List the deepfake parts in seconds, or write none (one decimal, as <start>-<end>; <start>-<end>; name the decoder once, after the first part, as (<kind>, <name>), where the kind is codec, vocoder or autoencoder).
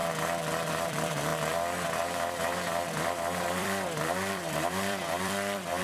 0.7-5.8 (vocoder, BigVGAN v2)